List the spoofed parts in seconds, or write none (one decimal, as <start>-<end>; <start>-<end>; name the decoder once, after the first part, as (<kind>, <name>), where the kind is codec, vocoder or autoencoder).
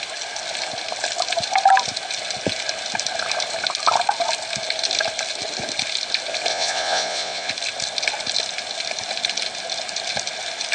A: 6.5-7.5 (vocoder, Vocos)